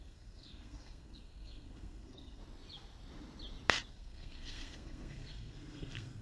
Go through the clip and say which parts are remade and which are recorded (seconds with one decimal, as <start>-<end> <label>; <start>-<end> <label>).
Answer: 0.0-2.4 remade; 2.4-3.9 recorded; 3.9-6.2 remade